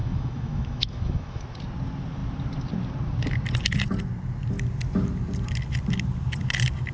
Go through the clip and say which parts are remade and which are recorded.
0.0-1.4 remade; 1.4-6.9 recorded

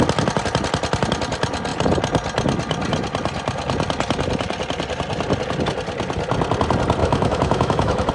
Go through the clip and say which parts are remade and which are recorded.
0.0-7.0 recorded; 7.0-8.1 remade

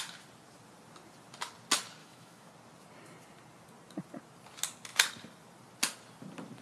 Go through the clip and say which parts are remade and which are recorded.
0.0-2.0 recorded; 2.0-2.5 remade; 2.5-6.6 recorded

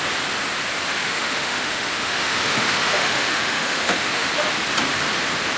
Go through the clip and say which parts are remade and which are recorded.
0.0-0.9 recorded; 0.9-4.3 remade; 4.3-5.6 recorded

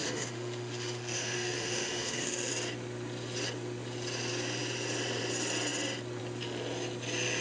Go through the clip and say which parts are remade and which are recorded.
0.0-2.5 remade; 2.5-7.4 recorded

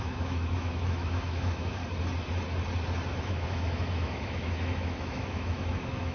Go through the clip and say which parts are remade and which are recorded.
0.0-1.8 remade; 1.8-3.1 recorded; 3.1-6.1 remade

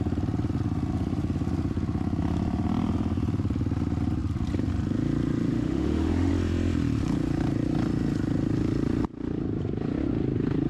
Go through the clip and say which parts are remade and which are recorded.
0.0-5.5 recorded; 5.5-6.3 remade; 6.3-10.7 recorded